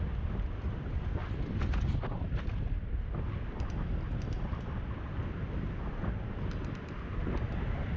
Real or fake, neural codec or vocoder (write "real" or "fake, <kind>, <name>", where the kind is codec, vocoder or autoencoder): real